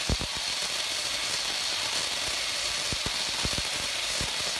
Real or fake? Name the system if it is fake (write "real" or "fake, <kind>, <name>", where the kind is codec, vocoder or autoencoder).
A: real